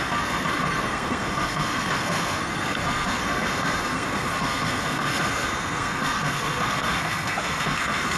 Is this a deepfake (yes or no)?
yes